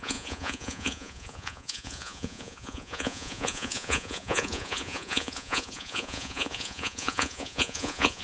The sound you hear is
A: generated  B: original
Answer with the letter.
A